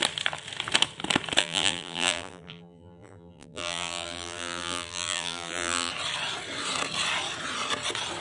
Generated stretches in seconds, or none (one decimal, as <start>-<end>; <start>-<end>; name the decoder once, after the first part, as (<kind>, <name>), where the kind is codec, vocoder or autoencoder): 1.4-5.9 (vocoder, BigVGAN v2)